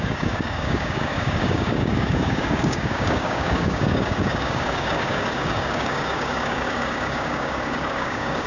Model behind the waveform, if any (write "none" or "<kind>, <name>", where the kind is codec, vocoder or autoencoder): codec, DAC